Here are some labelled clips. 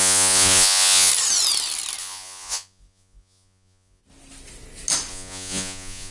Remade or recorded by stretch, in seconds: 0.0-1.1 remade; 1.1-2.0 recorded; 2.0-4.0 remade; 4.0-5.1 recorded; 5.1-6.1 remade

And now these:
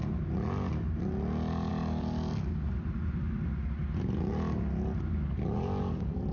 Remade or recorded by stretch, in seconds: 0.0-6.3 recorded

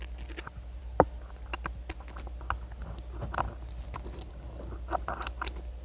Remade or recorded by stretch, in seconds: 0.0-5.8 recorded

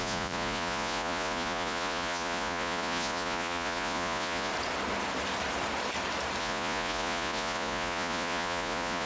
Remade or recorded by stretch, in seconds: 0.0-4.5 remade; 4.5-6.4 recorded; 6.4-9.1 remade